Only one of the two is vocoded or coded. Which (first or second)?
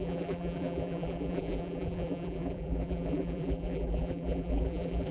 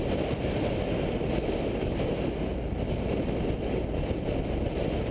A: first